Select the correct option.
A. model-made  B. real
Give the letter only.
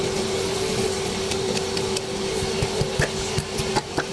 B